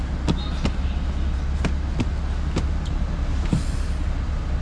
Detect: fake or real real